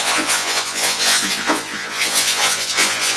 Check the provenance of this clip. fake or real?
fake